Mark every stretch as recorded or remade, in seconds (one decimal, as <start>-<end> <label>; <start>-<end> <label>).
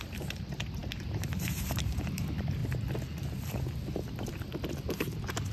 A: 0.0-2.6 remade; 2.6-5.5 recorded